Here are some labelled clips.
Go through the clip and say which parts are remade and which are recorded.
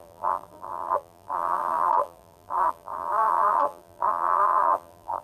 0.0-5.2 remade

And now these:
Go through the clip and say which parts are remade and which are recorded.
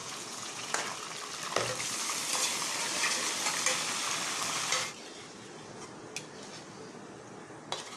0.0-0.8 remade; 0.8-8.0 recorded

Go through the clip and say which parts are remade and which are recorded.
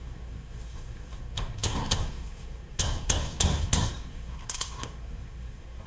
0.0-5.9 remade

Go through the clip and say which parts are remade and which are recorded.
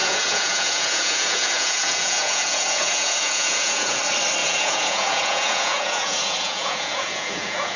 0.0-4.0 remade; 4.0-4.4 recorded; 4.4-7.8 remade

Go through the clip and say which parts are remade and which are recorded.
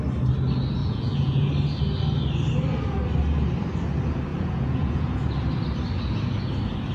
0.0-0.8 recorded; 0.8-1.5 remade; 1.5-4.3 recorded; 4.3-5.3 remade; 5.3-6.9 recorded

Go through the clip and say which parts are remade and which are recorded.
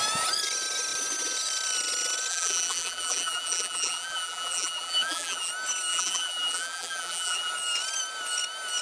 0.0-2.3 recorded; 2.3-5.5 remade; 5.5-5.9 recorded; 5.9-7.5 remade; 7.5-8.8 recorded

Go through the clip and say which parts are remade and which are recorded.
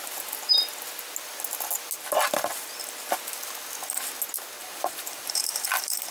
0.0-4.6 recorded; 4.6-6.1 remade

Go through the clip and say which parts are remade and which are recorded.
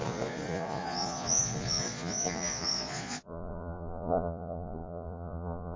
0.0-5.8 remade